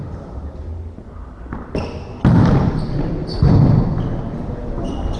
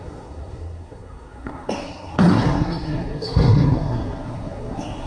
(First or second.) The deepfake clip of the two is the second